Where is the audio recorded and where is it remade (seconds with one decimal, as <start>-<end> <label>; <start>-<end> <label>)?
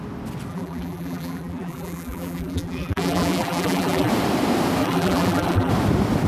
0.0-0.5 recorded; 0.5-4.1 remade; 4.1-4.8 recorded; 4.8-5.7 remade; 5.7-6.3 recorded